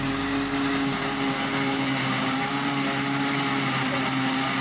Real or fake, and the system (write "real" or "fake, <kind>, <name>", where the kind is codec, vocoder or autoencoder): real